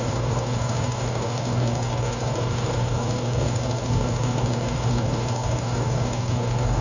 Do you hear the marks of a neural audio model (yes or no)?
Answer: yes